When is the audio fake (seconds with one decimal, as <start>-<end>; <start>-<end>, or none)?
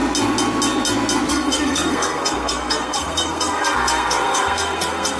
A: 1.3-5.2